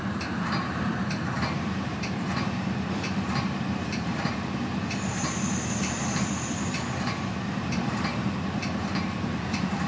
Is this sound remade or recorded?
remade